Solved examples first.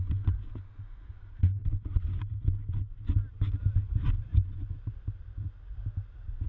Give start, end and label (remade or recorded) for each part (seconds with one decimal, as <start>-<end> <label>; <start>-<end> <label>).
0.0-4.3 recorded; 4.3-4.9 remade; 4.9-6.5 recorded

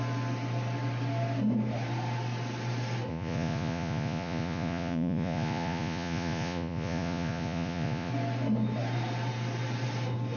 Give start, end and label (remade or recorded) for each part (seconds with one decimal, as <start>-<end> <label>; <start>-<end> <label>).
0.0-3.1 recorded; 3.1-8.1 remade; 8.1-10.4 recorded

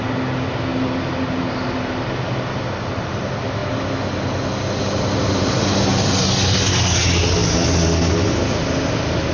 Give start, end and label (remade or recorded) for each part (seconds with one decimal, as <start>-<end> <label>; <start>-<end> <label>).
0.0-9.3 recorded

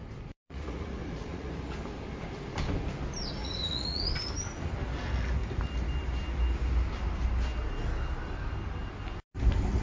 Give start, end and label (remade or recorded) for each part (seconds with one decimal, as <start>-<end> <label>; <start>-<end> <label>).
0.0-0.4 recorded; 0.4-1.5 remade; 1.5-3.4 recorded; 3.4-4.1 remade; 4.1-9.8 recorded

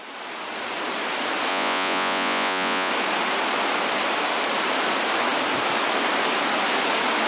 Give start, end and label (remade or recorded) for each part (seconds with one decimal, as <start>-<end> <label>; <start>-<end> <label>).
0.0-1.5 recorded; 1.5-2.9 remade; 2.9-7.3 recorded

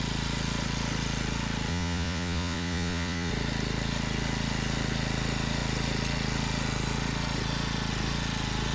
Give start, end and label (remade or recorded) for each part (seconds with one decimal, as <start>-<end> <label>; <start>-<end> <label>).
0.0-1.7 recorded; 1.7-3.3 remade; 3.3-8.7 recorded

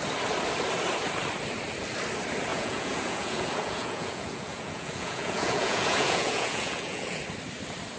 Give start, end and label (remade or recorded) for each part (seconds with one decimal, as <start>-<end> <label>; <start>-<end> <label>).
0.0-2.5 recorded; 2.5-7.2 remade; 7.2-8.0 recorded